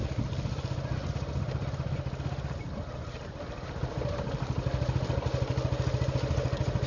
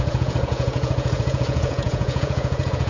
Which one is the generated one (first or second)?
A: second